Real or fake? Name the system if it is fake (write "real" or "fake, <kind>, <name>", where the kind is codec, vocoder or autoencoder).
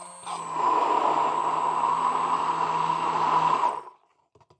real